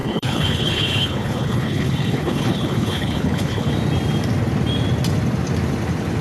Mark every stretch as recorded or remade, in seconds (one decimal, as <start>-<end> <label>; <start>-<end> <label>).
0.0-3.7 remade; 3.7-6.2 recorded